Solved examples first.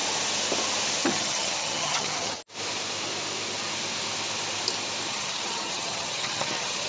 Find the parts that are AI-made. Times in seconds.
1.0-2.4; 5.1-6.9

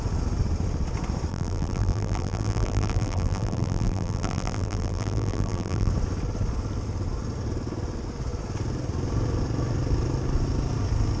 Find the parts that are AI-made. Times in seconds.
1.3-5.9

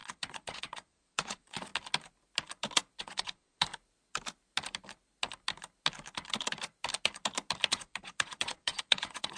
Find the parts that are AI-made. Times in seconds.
0.0-1.7; 3.0-3.7; 7.7-9.4

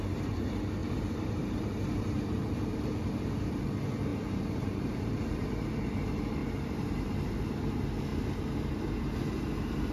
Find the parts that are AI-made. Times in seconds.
0.8-3.6; 4.1-5.7; 6.4-7.3

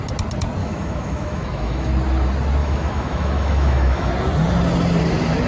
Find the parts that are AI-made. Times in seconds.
0.6-1.9; 2.6-4.1

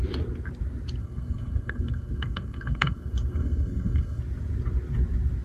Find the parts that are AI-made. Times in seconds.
1.0-4.2